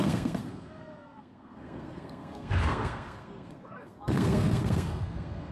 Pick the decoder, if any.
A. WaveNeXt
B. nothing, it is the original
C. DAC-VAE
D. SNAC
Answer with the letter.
D